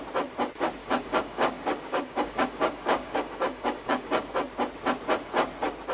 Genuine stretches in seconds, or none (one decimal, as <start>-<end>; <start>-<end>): 0.0-0.8; 4.3-5.9